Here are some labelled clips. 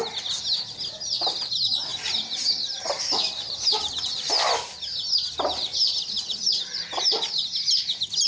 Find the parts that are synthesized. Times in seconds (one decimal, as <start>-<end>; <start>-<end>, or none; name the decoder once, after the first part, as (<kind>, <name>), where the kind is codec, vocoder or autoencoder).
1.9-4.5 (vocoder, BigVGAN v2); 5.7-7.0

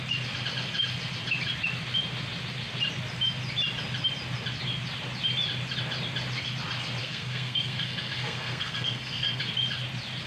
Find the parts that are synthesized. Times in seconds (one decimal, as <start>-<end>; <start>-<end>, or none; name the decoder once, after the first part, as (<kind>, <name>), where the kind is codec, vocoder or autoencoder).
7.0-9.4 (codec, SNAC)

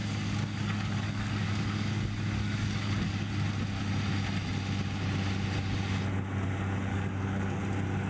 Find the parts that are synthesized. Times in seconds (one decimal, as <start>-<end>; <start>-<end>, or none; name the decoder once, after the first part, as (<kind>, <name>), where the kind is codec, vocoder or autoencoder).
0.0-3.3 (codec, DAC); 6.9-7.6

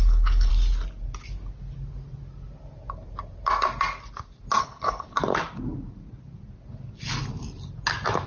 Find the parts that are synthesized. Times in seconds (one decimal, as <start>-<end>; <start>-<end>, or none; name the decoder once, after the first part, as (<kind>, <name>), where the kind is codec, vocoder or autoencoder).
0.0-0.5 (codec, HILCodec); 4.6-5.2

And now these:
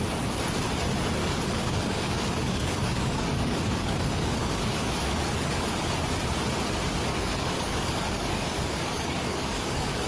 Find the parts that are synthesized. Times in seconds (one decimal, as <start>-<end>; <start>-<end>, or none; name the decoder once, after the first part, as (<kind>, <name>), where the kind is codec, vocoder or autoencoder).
1.2-5.7 (codec, DAC); 7.1-10.1

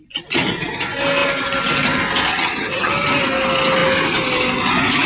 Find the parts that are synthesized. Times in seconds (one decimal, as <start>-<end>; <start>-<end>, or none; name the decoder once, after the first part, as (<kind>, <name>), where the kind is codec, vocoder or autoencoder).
2.3-2.9 (vocoder, HiFi-GAN)

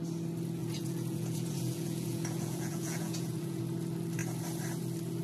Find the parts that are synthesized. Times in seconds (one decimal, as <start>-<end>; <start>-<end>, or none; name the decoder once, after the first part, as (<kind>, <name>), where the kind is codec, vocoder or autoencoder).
0.6-3.6 (vocoder, Vocos)

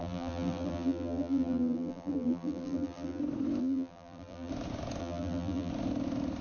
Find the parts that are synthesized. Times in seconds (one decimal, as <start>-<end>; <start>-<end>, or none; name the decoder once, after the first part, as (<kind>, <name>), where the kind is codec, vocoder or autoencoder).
0.0-3.2 (vocoder, BigVGAN v2); 3.6-4.5; 5.0-5.7